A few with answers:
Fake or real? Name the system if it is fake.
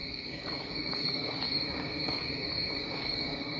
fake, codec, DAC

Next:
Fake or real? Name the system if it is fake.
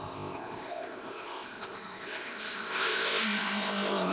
fake, codec, ZipCodec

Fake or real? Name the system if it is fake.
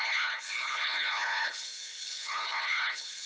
fake, codec, HILCodec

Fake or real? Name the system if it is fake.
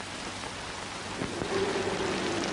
real